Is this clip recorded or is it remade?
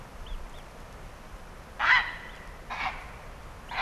recorded